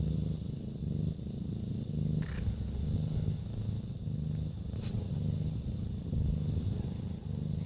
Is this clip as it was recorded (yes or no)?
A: yes